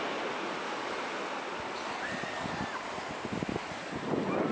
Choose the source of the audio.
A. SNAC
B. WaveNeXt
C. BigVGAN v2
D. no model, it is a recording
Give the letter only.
D